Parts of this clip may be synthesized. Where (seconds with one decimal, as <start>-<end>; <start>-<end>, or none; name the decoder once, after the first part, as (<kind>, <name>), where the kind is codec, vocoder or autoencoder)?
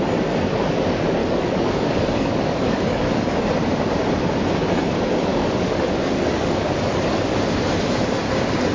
1.2-3.4 (codec, DAC); 5.3-7.4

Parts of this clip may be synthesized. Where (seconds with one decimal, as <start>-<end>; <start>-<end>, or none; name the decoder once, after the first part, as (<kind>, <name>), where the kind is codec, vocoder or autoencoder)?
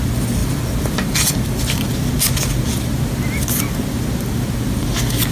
none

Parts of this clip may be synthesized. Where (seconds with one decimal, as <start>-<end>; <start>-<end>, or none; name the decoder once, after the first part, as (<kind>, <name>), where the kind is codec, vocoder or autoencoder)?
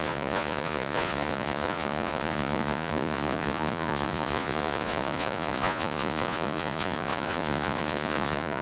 0.0-8.6 (vocoder, Vocos)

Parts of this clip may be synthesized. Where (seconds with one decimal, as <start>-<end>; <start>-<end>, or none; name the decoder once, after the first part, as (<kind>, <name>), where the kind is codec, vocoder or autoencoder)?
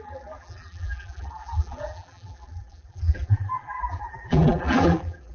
0.0-5.3 (vocoder, BigVGAN v2)